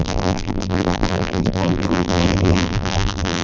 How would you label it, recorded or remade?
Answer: remade